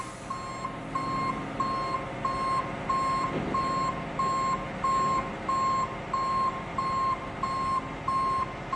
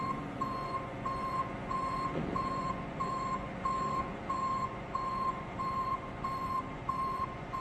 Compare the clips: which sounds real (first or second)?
first